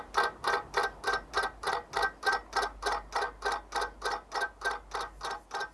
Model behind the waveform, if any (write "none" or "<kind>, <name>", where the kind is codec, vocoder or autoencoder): none